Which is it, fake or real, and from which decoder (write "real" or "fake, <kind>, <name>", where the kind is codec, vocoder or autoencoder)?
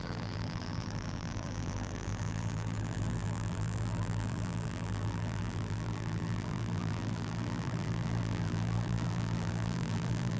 fake, vocoder, BigVGAN v2